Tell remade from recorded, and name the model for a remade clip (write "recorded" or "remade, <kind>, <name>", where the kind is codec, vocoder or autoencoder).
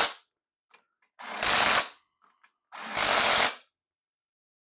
recorded